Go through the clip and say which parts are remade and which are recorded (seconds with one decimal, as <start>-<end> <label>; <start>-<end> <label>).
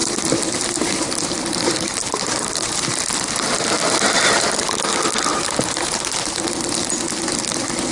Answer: 0.0-5.3 recorded; 5.3-6.4 remade; 6.4-7.9 recorded